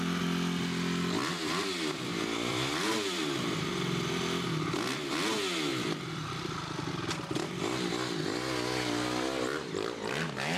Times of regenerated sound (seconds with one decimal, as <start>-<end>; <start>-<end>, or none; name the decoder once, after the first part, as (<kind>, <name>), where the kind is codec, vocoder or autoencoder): 2.5-3.2 (vocoder, BigVGAN v2); 5.7-6.9